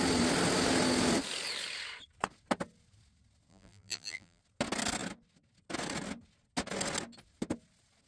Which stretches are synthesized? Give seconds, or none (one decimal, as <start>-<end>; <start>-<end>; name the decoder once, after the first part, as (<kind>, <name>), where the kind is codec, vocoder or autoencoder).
3.5-4.4 (vocoder, BigVGAN v2)